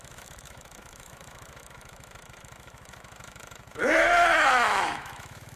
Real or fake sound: fake